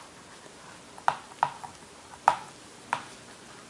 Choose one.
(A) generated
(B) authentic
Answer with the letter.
B